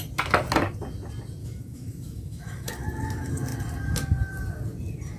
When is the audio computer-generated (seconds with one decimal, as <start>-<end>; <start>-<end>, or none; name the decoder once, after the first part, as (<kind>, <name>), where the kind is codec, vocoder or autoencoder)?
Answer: 1.4-2.7 (autoencoder, DAC-VAE)